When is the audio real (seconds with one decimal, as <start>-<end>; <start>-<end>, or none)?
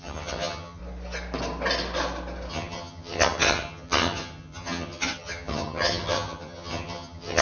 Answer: 0.8-2.5